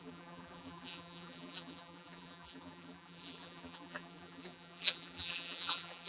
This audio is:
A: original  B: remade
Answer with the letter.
B